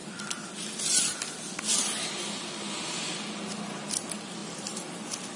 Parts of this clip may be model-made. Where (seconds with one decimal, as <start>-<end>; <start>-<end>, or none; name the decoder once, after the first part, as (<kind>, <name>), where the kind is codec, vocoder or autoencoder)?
none